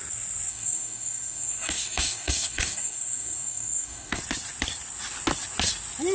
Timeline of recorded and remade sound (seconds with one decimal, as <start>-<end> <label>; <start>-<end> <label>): 0.0-0.5 recorded; 0.5-4.2 remade; 4.2-6.1 recorded